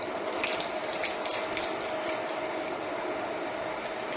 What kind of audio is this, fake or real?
real